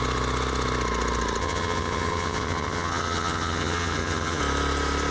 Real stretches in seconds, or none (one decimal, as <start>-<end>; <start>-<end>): 0.0-1.4; 4.4-5.1